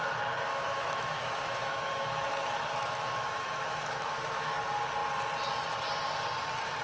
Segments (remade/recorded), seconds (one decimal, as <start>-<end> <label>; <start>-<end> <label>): 0.0-0.5 recorded; 0.5-4.6 remade; 4.6-6.8 recorded